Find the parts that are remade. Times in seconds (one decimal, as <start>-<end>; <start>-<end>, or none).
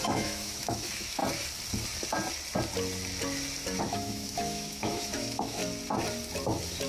0.0-1.2; 3.8-5.6